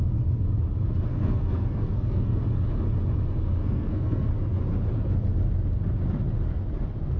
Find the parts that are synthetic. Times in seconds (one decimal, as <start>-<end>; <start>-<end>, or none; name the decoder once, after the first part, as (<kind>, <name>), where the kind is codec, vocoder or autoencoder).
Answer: 1.1-2.4 (codec, SNAC); 3.6-4.3